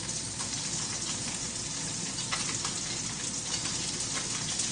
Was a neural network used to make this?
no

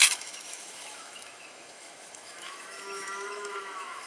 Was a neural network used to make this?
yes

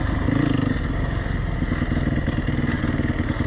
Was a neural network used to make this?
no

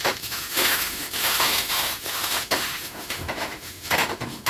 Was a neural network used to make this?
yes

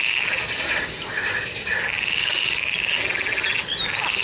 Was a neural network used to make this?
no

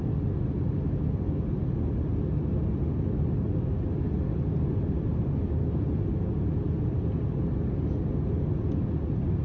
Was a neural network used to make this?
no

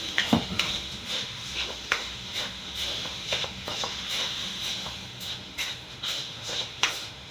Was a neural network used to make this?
yes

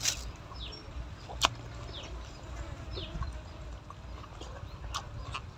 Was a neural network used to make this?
no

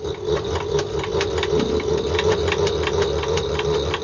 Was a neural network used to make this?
no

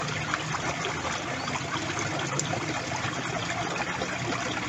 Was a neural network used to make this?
no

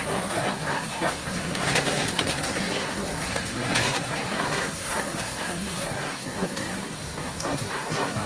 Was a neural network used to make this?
yes